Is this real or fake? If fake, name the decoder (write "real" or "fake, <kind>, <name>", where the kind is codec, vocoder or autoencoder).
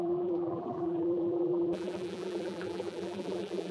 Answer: fake, vocoder, BigVGAN v2